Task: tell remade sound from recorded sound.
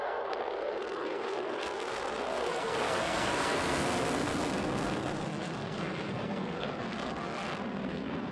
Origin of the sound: remade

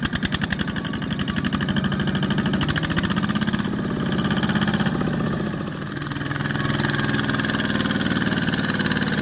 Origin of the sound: recorded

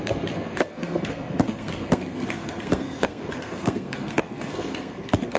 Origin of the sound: remade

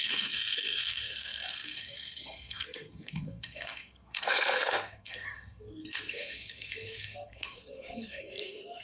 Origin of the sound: remade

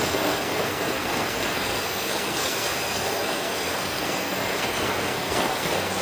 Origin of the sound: remade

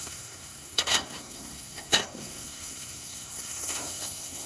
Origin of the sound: remade